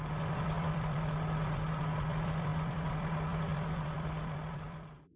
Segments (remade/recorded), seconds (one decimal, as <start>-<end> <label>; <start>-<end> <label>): 0.0-5.2 remade